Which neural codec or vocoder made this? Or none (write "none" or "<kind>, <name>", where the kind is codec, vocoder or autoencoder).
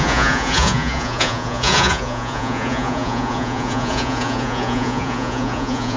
vocoder, Vocos